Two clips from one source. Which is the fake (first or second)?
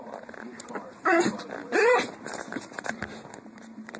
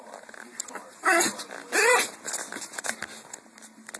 first